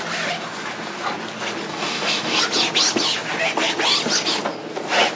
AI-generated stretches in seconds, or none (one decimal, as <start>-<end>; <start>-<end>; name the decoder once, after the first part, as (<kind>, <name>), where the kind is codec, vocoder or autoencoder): 1.7-2.4 (codec, DAC)